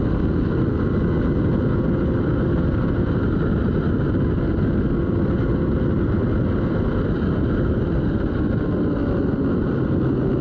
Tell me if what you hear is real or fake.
real